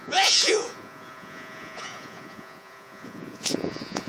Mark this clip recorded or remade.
remade